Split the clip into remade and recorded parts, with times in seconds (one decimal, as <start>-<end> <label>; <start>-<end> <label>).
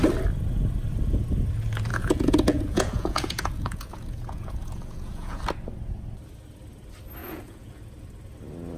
0.0-1.9 recorded; 1.9-5.4 remade; 5.4-7.2 recorded; 7.2-7.7 remade; 7.7-8.8 recorded